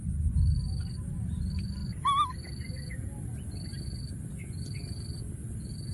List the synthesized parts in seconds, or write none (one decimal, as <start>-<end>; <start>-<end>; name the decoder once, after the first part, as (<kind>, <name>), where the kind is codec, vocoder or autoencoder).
none